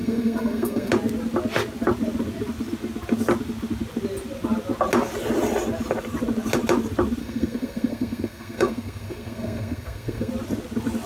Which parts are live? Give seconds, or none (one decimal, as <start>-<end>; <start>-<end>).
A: 0.9-7.2; 10.3-11.1